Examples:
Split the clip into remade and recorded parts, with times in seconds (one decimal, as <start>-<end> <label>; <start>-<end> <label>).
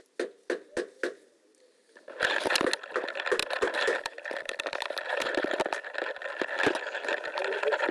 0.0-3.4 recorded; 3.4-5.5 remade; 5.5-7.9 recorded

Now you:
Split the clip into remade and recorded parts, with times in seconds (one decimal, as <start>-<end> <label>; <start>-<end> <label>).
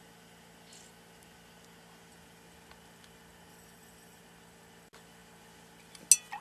0.0-3.5 recorded; 3.5-4.2 remade; 4.2-6.4 recorded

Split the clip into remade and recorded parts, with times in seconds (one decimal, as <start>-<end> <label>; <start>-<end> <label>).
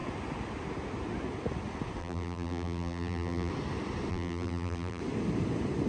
0.0-2.0 recorded; 2.0-3.5 remade; 3.5-4.1 recorded; 4.1-5.0 remade; 5.0-5.9 recorded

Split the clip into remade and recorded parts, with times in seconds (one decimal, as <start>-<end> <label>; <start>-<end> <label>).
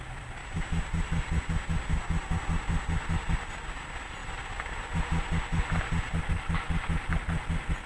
0.0-7.9 recorded